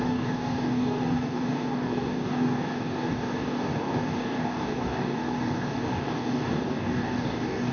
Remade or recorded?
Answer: remade